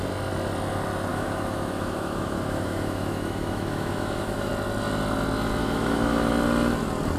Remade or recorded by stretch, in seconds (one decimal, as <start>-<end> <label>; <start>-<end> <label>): 0.0-1.1 recorded; 1.1-4.5 remade; 4.5-5.6 recorded; 5.6-6.3 remade; 6.3-7.2 recorded

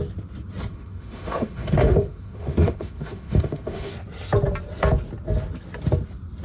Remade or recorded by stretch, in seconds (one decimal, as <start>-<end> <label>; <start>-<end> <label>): 0.0-0.7 recorded; 0.7-3.9 remade; 3.9-6.4 recorded

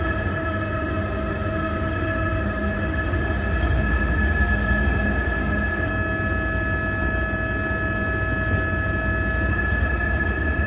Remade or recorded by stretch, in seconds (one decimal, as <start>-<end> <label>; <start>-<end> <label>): 0.0-5.9 remade; 5.9-9.5 recorded; 9.5-10.7 remade